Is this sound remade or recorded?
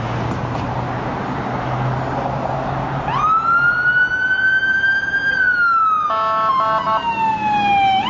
recorded